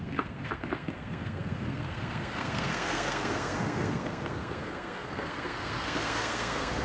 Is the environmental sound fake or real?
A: fake